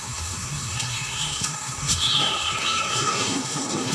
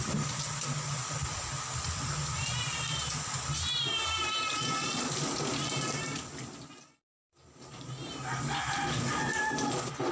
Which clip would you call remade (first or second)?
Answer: first